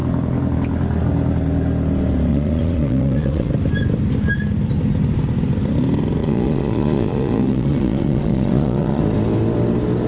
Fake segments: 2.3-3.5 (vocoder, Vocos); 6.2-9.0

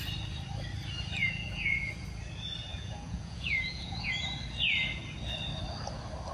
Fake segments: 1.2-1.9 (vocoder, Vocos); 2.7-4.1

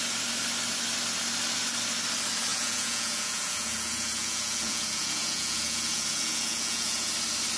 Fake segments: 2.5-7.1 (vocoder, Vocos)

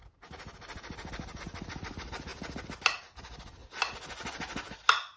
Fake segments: none

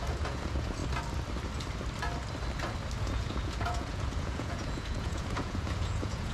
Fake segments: 0.0-0.8 (vocoder, Vocos); 3.0-6.3

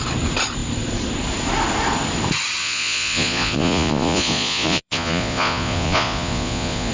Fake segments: 2.6-6.9 (vocoder, Vocos)